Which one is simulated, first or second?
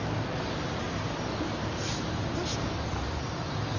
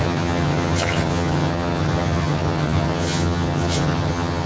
second